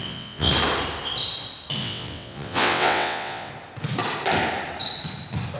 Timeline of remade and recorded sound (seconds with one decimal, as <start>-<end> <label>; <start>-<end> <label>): 0.0-0.5 remade; 0.5-1.8 recorded; 1.8-3.5 remade; 3.5-5.6 recorded